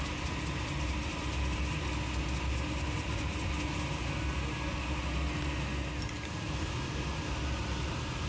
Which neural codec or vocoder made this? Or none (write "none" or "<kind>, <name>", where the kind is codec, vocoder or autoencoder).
none